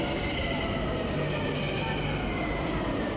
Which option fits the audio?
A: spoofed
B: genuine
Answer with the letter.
B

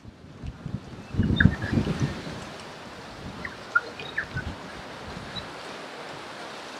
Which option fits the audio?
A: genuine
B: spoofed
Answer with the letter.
B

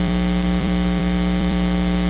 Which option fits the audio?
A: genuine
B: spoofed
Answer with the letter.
B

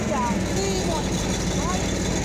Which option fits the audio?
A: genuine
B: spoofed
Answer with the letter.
A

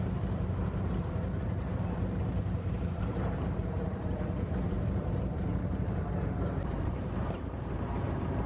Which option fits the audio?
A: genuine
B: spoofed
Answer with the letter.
B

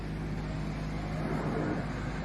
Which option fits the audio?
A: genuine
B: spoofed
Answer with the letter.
A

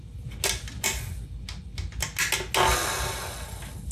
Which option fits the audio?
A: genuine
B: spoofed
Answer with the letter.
A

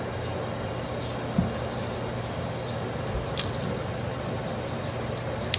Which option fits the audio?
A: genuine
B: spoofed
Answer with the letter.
A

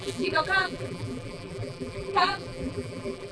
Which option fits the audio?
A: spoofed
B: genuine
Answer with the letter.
A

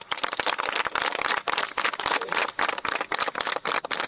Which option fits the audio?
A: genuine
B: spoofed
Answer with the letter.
A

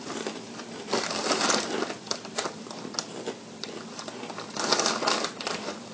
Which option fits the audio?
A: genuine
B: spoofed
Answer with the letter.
A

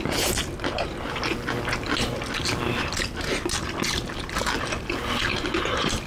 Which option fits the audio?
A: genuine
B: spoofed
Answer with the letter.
A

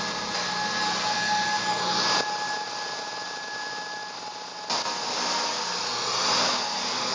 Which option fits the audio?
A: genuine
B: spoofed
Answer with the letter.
A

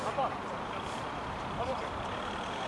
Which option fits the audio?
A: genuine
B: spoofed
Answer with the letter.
B